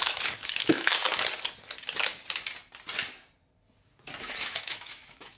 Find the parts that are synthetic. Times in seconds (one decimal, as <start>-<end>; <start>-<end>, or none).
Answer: 0.0-1.0; 4.2-5.4